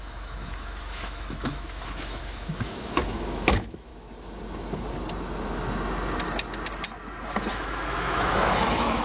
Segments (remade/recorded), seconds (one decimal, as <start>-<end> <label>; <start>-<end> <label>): 0.0-3.9 remade; 3.9-7.5 recorded; 7.5-9.0 remade